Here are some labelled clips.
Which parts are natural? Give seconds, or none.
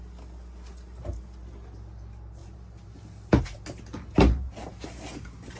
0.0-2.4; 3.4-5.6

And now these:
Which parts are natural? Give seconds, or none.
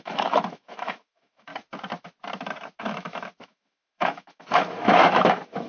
1.5-2.8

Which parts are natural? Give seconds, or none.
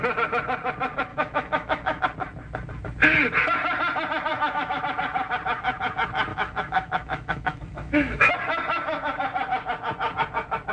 0.0-1.1; 2.0-4.3; 4.8-6.3; 8.3-10.7